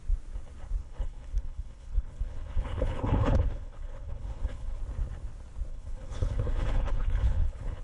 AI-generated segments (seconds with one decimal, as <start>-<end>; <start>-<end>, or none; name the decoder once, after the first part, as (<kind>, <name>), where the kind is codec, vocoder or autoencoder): 0.8-4.8 (codec, HILCodec); 5.7-7.8